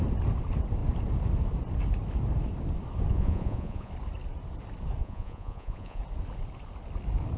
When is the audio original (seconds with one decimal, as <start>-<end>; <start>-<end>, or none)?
0.0-3.1; 3.9-5.0; 6.0-7.4